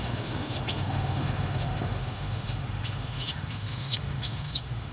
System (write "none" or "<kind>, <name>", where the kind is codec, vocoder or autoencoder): autoencoder, DAC-VAE